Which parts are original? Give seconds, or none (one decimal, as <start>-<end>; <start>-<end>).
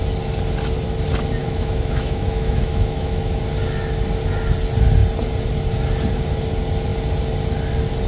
0.0-1.4; 3.4-8.1